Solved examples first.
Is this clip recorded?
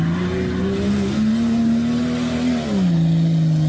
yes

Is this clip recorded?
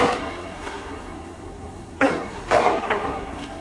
no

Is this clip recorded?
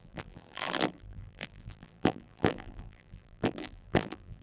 no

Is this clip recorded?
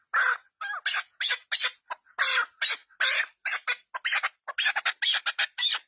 yes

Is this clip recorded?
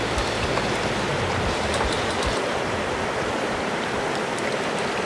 no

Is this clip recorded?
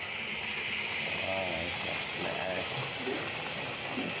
yes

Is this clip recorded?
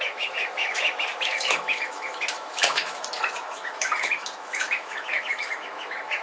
no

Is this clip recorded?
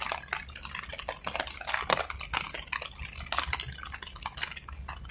yes